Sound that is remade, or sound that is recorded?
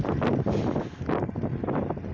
recorded